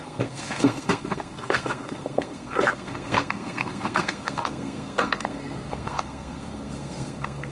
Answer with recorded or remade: remade